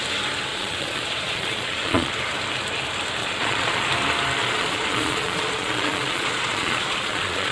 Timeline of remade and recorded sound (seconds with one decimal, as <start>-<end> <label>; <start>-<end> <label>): 0.0-0.5 recorded; 0.5-2.1 remade; 2.1-3.2 recorded; 3.2-3.9 remade; 3.9-4.4 recorded; 4.4-7.5 remade